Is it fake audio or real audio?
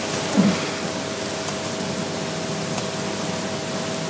real